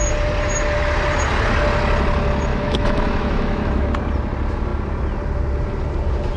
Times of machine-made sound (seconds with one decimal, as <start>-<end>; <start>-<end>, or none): 2.5-3.9